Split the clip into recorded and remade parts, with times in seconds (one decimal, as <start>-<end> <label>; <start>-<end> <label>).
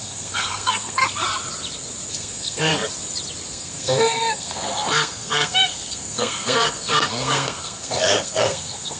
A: 0.0-1.0 remade; 1.0-2.1 recorded; 2.1-2.7 remade; 2.7-3.5 recorded; 3.5-9.0 remade